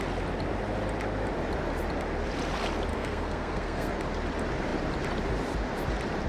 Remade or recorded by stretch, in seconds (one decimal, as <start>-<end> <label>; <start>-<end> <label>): 0.0-2.9 recorded; 2.9-3.9 remade; 3.9-6.3 recorded